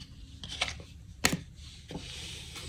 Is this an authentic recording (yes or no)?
yes